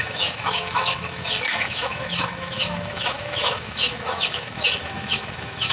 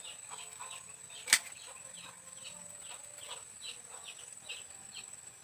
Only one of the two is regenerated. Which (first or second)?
first